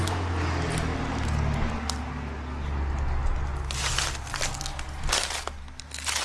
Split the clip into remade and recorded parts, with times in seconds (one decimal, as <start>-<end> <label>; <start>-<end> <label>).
0.0-6.2 recorded

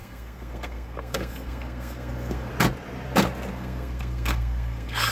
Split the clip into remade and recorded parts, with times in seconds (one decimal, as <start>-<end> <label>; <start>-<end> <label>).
0.0-2.5 remade; 2.5-3.5 recorded; 3.5-5.1 remade